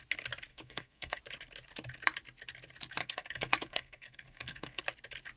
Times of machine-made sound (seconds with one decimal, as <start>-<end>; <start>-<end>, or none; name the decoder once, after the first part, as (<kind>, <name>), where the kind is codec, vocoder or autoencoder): 0.5-1.2 (codec, SNAC); 3.0-4.8